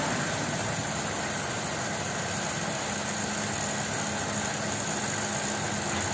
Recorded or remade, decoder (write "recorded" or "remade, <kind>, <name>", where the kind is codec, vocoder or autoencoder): recorded